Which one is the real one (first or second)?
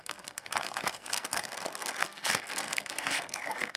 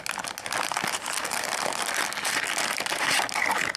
second